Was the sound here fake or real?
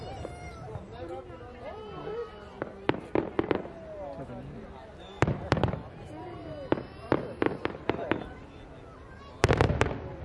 real